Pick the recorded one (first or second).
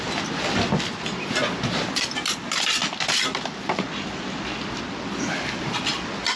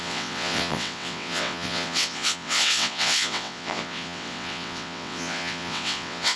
first